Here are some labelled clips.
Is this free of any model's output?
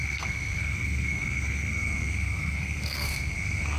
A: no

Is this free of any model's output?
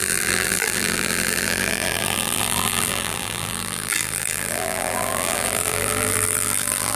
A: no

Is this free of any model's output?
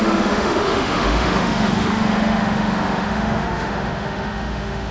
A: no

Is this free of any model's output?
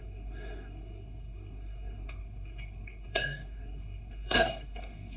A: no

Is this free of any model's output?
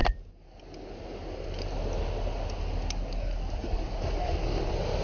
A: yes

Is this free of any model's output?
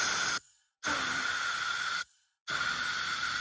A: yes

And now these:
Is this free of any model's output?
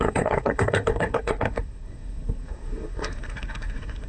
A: no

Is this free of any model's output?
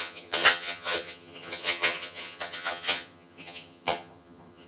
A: no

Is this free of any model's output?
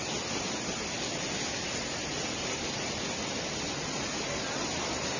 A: yes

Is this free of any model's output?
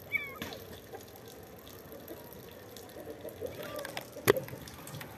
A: yes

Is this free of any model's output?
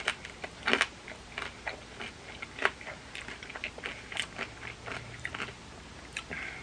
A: yes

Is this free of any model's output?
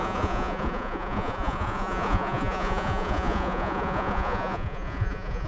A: no